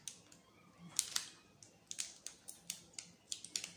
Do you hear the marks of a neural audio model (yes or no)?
no